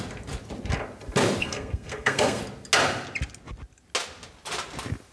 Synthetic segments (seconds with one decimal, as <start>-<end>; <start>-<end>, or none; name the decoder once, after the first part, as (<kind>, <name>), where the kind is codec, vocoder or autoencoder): 1.4-2.4 (codec, SNAC)